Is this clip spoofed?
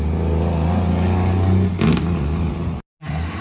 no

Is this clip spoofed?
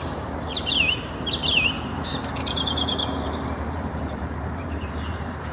yes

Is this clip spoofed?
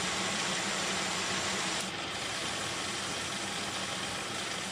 yes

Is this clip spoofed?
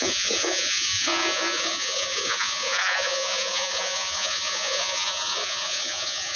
yes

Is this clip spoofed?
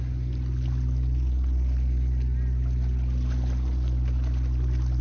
no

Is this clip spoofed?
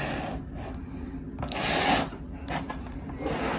no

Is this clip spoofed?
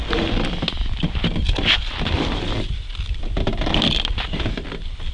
no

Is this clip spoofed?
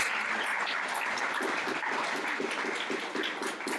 no